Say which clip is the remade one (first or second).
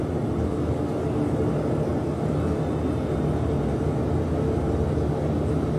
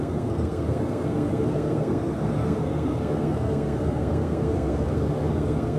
second